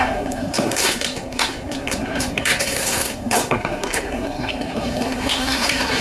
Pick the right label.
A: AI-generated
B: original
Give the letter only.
A